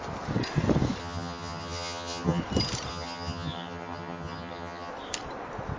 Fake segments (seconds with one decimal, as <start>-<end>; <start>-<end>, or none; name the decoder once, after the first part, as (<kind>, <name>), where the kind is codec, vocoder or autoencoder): 1.0-2.4 (vocoder, HiFi-GAN); 2.9-4.9